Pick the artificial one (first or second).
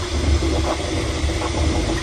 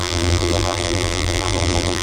second